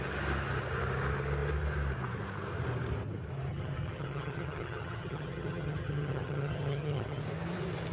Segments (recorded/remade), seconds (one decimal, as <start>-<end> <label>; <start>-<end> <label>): 0.0-3.5 recorded; 3.5-7.2 remade; 7.2-7.9 recorded